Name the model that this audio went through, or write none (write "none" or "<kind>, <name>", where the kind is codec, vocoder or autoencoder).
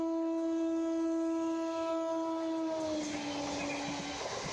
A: none